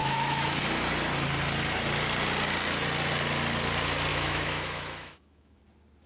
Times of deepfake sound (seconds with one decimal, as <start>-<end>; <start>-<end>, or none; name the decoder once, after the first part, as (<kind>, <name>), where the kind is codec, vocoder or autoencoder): 0.0-0.6 (autoencoder, DAC-VAE); 4.1-5.6